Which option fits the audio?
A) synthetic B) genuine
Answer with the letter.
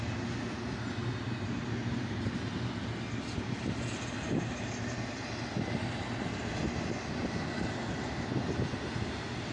B